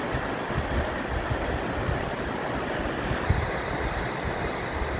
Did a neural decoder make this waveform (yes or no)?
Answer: no